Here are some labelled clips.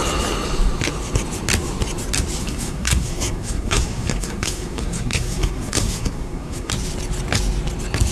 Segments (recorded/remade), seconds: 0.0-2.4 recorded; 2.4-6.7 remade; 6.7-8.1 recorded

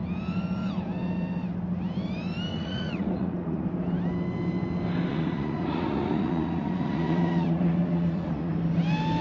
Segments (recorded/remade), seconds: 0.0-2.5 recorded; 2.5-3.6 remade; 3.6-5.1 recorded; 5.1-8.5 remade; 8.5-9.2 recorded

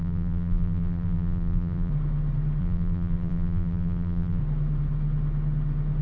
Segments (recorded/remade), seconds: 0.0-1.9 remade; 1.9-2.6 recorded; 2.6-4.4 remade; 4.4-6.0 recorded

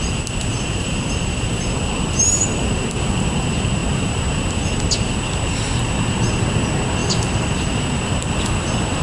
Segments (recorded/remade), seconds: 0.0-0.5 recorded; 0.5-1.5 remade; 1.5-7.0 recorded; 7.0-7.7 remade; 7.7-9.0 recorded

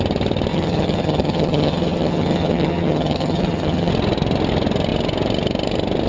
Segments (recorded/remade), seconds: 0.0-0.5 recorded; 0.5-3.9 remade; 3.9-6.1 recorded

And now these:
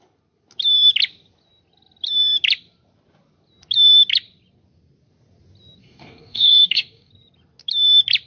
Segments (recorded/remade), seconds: 0.0-5.8 recorded; 5.8-7.1 remade; 7.1-8.3 recorded

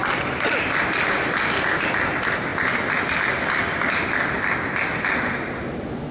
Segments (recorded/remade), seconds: 0.0-6.1 recorded

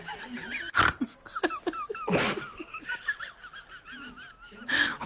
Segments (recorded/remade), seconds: 0.0-2.7 recorded; 2.7-3.3 remade; 3.3-5.1 recorded